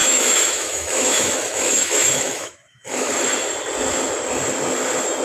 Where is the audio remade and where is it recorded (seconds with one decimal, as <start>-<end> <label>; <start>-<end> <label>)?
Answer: 0.0-3.1 remade; 3.1-5.2 recorded